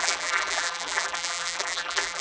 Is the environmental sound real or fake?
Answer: fake